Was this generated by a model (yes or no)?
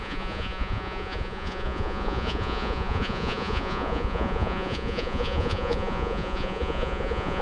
yes